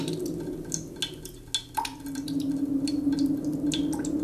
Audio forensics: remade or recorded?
recorded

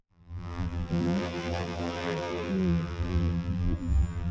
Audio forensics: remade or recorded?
remade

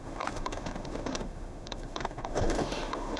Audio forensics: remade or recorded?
remade